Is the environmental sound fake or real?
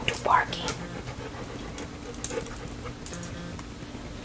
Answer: real